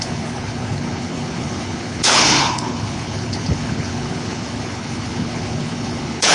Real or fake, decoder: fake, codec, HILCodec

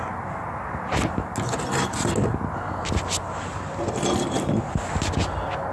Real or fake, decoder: real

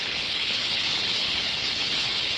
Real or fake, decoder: fake, codec, HILCodec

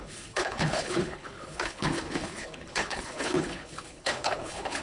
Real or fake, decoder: fake, codec, HILCodec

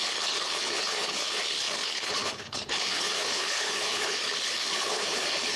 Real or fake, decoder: fake, codec, HILCodec